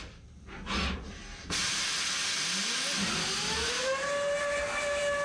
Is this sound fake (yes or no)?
no